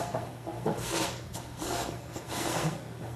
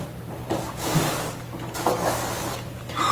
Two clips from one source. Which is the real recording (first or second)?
second